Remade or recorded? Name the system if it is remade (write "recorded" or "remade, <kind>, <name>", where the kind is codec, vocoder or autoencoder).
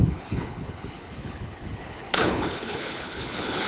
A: remade, codec, HILCodec